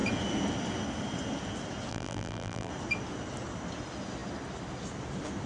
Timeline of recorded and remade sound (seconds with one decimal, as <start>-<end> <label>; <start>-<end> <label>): 0.0-1.9 recorded; 1.9-2.7 remade; 2.7-5.5 recorded